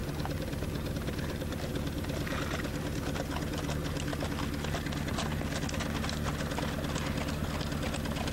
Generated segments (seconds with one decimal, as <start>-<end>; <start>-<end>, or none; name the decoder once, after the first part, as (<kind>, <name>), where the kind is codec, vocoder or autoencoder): 0.0-4.1 (vocoder, BigVGAN v2)